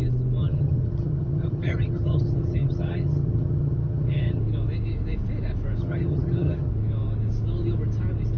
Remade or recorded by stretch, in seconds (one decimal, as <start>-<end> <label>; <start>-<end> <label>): 0.0-0.4 recorded; 0.4-4.4 remade; 4.4-5.8 recorded; 5.8-6.7 remade; 6.7-8.4 recorded

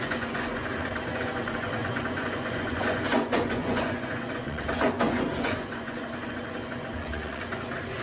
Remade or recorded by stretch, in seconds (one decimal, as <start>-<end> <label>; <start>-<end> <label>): 0.0-8.0 remade